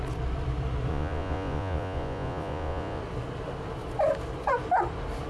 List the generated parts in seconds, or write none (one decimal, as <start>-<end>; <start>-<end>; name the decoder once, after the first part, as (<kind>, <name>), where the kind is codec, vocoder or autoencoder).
0.9-3.0 (vocoder, Vocos)